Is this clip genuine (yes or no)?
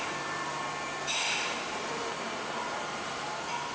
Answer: yes